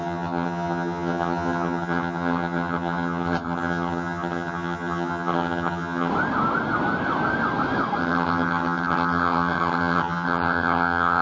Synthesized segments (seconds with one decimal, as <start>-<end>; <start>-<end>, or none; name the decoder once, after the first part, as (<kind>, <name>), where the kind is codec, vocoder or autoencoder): 0.0-6.1 (vocoder, HiFi-GAN); 8.0-11.2